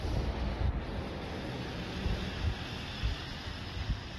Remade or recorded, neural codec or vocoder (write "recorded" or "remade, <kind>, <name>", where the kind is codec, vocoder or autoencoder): recorded